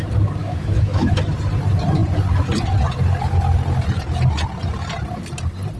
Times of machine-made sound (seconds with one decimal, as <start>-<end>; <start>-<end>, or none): 0.4-1.2